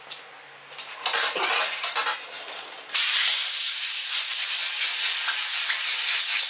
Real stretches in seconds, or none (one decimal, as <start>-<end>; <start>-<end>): 0.0-2.0; 4.4-6.5